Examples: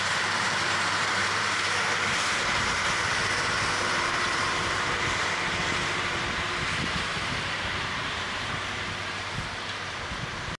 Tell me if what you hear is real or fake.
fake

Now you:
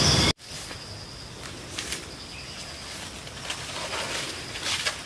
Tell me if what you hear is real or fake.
real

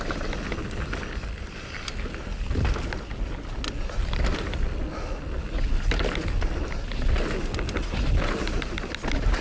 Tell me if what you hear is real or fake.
real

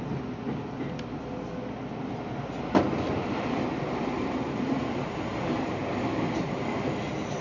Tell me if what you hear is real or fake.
real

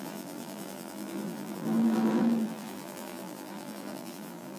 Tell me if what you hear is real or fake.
fake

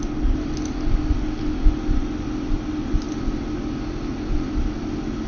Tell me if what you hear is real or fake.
real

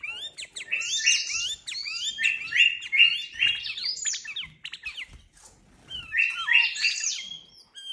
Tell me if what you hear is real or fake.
real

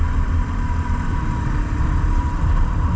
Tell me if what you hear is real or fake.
fake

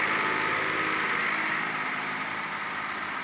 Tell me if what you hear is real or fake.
real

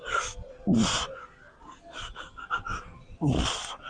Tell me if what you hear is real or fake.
real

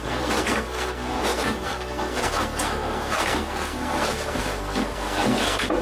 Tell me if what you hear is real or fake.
fake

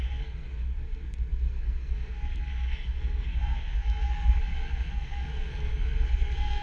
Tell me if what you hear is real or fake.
fake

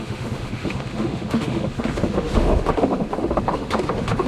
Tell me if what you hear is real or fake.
fake